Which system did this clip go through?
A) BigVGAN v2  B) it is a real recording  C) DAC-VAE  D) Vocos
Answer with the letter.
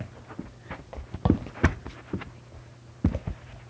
B